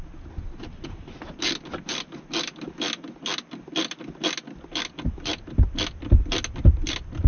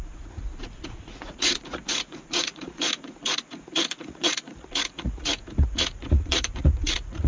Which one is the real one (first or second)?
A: first